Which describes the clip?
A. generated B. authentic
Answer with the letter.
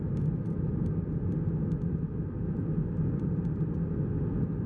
B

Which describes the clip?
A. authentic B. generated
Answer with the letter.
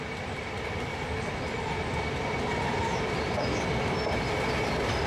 A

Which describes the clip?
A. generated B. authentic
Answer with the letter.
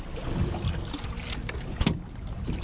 A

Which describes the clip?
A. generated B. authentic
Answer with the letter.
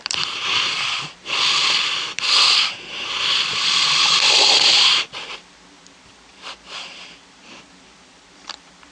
A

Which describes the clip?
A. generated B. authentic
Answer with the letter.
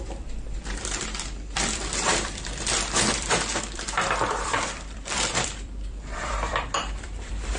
A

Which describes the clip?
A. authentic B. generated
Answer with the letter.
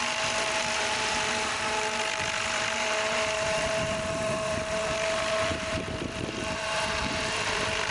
B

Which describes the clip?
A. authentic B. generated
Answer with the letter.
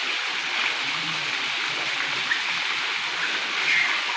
A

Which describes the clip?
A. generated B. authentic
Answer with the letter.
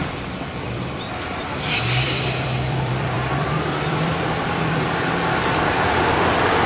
A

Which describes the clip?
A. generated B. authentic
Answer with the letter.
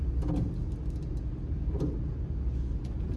B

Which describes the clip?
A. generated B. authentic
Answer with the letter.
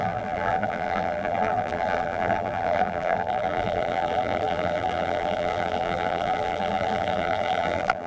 A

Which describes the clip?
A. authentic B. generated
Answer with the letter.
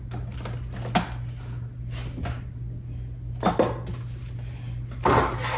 A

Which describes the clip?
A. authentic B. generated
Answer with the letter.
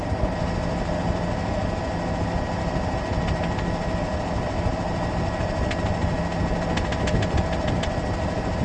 A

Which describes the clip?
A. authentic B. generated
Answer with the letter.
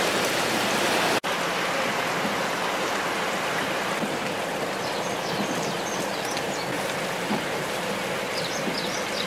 A